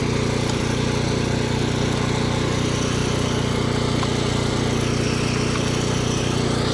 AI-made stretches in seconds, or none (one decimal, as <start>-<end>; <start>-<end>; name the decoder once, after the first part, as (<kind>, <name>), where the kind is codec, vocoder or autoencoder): none